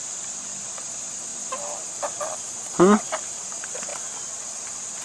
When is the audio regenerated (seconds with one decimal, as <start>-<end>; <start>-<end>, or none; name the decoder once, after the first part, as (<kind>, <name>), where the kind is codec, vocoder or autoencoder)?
none